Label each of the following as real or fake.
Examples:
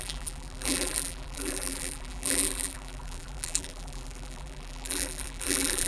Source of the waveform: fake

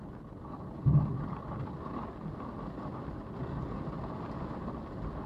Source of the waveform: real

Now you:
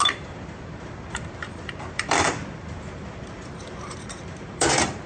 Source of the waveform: fake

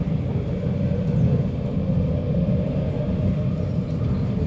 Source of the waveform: real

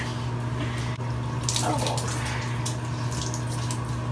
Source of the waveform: real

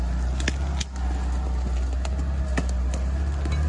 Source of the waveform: real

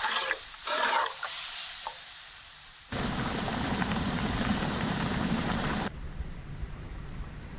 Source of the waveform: fake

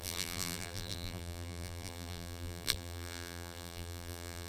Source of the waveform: fake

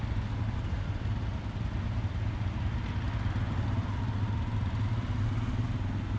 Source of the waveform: real